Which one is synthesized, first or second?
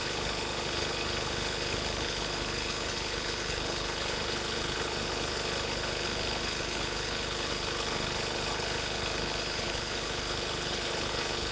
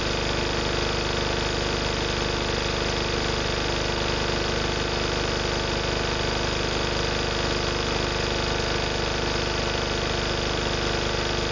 first